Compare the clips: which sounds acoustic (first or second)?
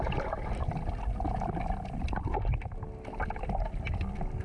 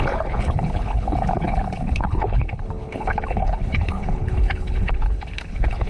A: first